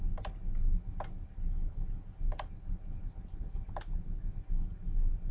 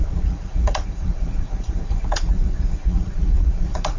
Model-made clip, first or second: second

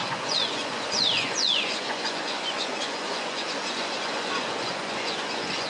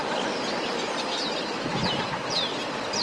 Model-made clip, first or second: first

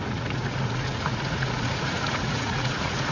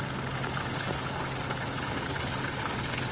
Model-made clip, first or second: first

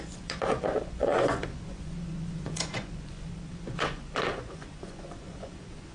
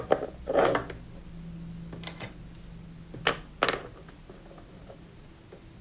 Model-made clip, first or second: first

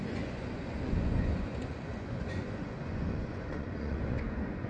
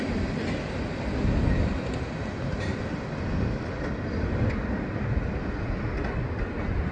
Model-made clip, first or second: first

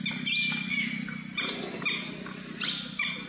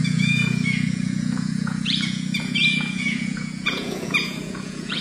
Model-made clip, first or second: second